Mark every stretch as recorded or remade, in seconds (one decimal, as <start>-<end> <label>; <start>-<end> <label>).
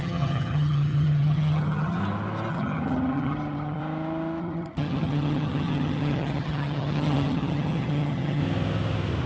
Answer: 0.0-2.0 remade; 2.0-2.5 recorded; 2.5-3.8 remade; 3.8-4.4 recorded; 4.4-8.4 remade; 8.4-9.3 recorded